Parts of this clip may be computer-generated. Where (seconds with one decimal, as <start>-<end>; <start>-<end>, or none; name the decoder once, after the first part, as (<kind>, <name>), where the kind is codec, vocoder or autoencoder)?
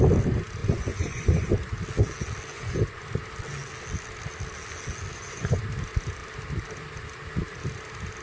0.6-1.5 (vocoder, Vocos); 2.5-3.0; 5.1-5.6